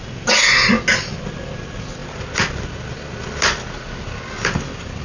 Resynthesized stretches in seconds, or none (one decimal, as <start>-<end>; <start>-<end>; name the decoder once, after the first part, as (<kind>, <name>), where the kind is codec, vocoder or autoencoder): none